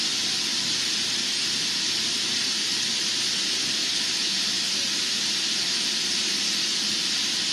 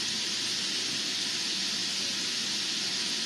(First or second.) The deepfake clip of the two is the first